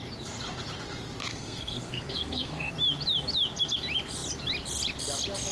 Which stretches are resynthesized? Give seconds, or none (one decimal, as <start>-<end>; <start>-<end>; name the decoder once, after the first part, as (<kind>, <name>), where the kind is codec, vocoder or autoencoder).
1.3-2.7 (codec, SNAC)